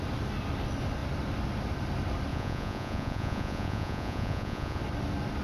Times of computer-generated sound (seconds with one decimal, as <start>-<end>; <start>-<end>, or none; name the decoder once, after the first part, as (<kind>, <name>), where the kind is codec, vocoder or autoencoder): 2.3-4.8 (vocoder, Vocos)